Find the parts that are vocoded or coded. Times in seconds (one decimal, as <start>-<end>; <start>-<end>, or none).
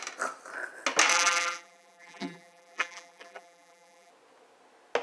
1.1-4.1